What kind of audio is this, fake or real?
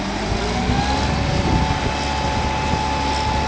real